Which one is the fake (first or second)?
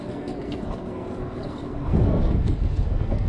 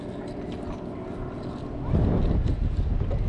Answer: first